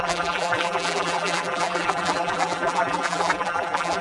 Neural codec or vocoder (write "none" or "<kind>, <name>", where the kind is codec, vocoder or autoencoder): vocoder, BigVGAN v2